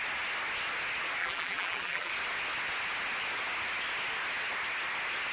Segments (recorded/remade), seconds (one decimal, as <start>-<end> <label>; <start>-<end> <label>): 0.0-1.2 recorded; 1.2-2.1 remade; 2.1-5.3 recorded